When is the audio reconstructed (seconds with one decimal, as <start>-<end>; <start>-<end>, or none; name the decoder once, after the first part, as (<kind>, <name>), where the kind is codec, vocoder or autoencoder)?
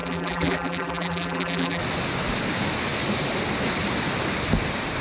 0.0-1.8 (vocoder, BigVGAN v2)